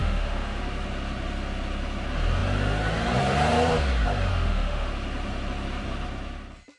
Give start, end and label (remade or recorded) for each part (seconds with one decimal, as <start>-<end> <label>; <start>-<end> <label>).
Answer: 0.0-0.6 remade; 0.6-4.3 recorded; 4.3-4.9 remade; 4.9-6.8 recorded